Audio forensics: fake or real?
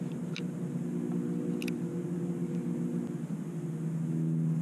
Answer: real